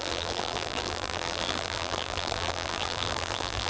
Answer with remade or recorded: remade